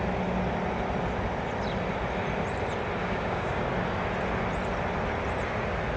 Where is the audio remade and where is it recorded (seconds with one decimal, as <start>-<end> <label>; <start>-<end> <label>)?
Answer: 0.0-3.0 recorded; 3.0-3.6 remade; 3.6-6.0 recorded